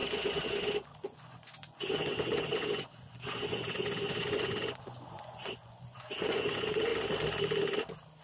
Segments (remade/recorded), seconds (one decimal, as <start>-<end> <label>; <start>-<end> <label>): 0.0-6.9 remade; 6.9-8.2 recorded